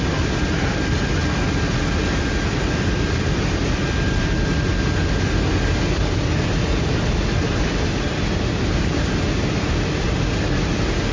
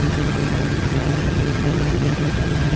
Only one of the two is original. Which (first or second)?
first